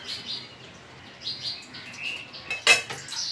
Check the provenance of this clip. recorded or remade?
recorded